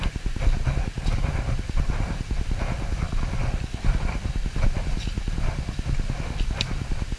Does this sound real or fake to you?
real